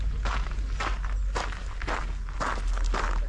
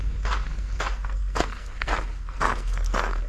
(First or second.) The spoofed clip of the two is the second